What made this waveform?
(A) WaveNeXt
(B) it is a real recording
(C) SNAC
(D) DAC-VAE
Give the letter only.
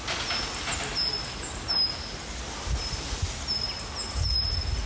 B